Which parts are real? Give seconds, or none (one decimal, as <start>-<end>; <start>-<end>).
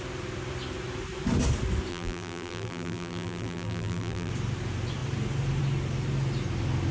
0.0-1.9; 4.3-6.9